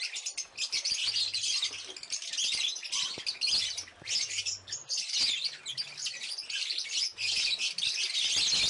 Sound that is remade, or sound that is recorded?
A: recorded